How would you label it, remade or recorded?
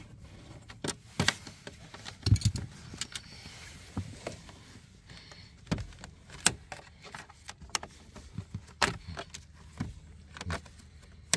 recorded